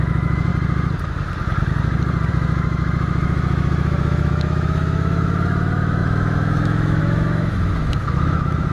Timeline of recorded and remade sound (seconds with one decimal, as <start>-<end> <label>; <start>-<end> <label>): 0.0-0.5 remade; 0.5-2.3 recorded; 2.3-8.7 remade